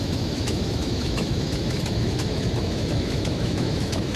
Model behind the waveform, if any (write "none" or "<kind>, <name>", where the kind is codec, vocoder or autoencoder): autoencoder, DAC-VAE